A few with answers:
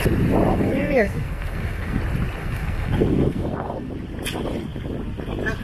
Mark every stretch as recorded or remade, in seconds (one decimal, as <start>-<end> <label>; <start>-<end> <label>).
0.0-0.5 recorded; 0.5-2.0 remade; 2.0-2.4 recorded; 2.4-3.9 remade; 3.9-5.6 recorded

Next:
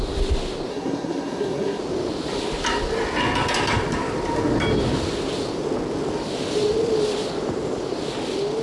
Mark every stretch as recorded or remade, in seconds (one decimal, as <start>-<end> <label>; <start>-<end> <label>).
0.0-0.7 recorded; 0.7-1.8 remade; 1.8-8.6 recorded

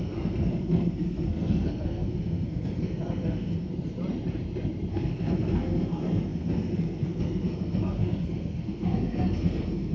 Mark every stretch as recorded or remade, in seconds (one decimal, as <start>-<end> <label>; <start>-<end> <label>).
0.0-3.7 remade; 3.7-4.9 recorded; 4.9-9.9 remade

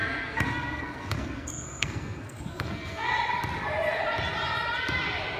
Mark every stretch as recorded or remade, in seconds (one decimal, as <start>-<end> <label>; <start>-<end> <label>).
0.0-3.1 remade; 3.1-5.4 recorded